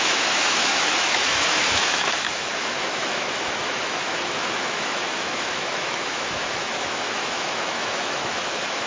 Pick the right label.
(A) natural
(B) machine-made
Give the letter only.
B